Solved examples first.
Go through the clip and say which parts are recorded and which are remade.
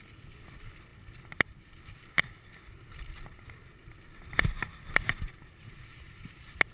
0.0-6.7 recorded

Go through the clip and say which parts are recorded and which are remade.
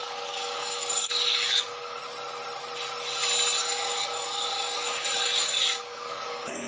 0.0-2.0 remade; 2.0-3.6 recorded; 3.6-6.7 remade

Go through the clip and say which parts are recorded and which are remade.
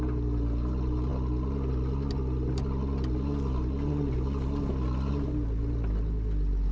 0.0-6.7 recorded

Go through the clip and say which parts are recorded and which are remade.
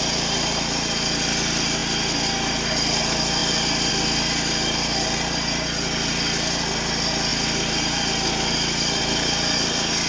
0.0-10.1 recorded